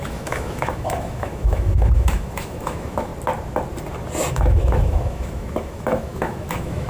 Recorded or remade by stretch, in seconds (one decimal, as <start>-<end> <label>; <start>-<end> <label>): 0.0-3.1 remade; 3.1-4.3 recorded; 4.3-6.9 remade